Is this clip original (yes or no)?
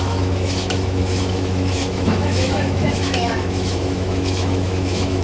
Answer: no